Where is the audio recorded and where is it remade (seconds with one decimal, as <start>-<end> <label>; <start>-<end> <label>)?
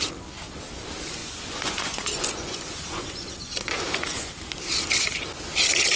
0.0-1.2 recorded; 1.2-4.3 remade; 4.3-6.0 recorded